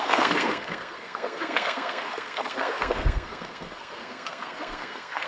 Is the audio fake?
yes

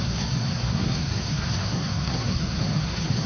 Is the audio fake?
yes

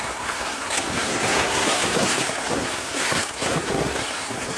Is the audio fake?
yes